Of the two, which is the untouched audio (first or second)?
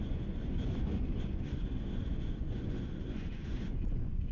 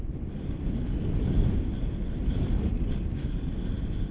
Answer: second